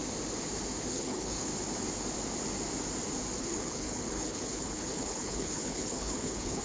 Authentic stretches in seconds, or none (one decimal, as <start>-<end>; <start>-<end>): 0.0-0.9; 1.5-3.4